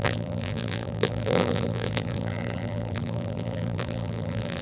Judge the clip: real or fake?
fake